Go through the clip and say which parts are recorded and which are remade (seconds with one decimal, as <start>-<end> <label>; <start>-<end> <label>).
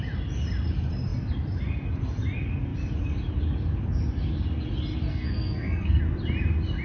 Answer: 0.0-5.1 recorded; 5.1-6.0 remade; 6.0-6.8 recorded